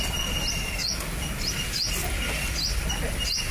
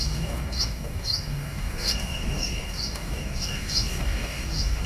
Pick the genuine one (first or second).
first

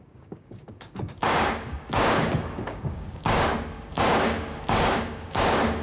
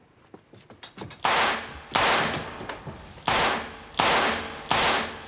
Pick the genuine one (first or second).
second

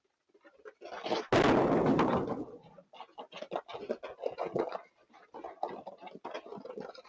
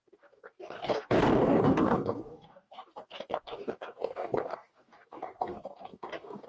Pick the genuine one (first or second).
first